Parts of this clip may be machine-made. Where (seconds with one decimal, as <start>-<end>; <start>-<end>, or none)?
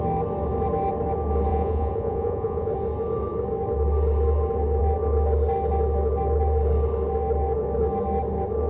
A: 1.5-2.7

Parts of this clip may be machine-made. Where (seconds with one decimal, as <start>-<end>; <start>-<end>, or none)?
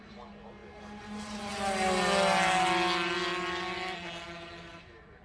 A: none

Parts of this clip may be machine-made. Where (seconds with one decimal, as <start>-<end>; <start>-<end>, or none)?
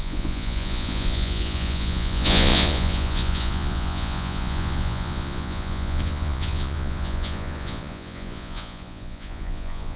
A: 0.0-10.0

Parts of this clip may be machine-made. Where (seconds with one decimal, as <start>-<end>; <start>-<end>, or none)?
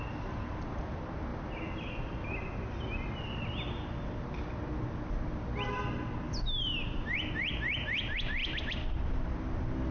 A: 8.4-9.1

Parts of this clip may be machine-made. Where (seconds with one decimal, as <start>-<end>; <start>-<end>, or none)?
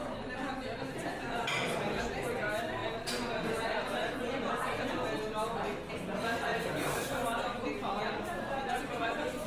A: 0.8-2.8; 5.9-7.2; 8.1-9.5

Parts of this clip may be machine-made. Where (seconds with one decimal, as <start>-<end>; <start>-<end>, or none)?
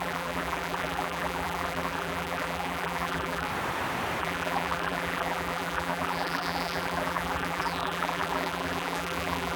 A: 0.0-3.5; 4.2-9.6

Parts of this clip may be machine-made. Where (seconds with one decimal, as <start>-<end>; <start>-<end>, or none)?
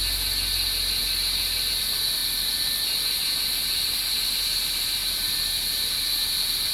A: none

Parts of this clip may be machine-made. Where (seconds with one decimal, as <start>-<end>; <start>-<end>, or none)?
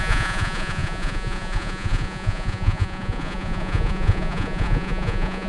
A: 0.0-5.5